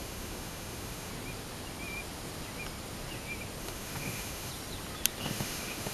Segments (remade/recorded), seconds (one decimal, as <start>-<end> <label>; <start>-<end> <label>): 0.0-1.1 remade; 1.1-3.6 recorded; 3.6-4.5 remade; 4.5-5.2 recorded; 5.2-5.9 remade